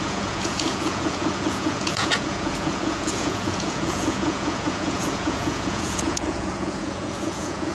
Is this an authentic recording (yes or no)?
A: no